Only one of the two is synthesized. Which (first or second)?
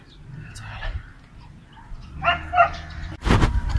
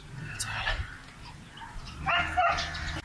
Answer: first